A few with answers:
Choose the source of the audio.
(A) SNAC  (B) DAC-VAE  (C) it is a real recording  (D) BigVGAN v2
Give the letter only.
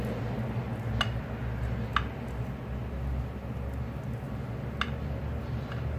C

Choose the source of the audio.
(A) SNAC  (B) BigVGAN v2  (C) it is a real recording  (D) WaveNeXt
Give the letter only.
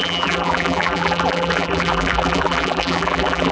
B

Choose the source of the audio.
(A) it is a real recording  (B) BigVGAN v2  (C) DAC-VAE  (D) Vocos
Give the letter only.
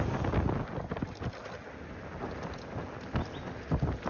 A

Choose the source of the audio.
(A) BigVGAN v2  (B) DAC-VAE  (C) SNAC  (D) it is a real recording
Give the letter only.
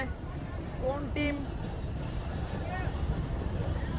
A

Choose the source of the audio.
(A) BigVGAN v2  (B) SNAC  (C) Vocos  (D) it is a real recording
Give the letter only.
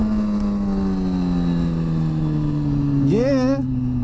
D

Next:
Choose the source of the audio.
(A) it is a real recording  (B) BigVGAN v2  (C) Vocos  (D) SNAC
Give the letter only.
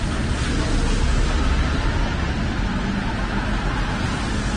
A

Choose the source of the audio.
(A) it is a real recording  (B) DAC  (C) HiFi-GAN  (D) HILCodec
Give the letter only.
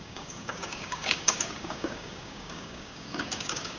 B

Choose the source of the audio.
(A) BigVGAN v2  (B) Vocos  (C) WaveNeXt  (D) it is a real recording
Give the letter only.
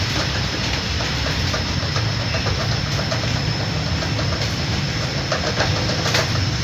A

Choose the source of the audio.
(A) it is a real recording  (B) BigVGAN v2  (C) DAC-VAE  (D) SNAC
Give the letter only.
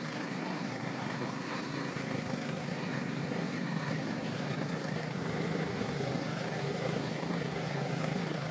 D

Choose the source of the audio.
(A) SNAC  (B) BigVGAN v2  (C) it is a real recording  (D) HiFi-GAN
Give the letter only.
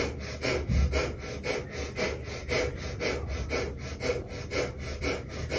C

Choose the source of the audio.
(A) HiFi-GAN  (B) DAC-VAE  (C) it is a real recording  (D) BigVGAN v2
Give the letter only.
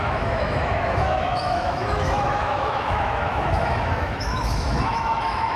B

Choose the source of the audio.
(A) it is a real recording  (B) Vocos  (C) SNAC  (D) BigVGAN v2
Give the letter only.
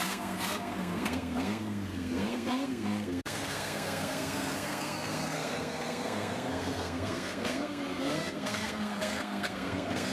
C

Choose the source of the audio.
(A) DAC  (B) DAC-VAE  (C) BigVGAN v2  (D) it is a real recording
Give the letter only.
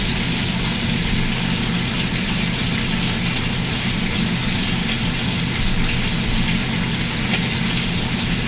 D